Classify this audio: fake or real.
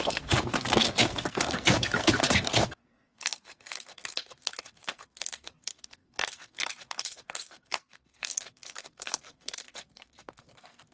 fake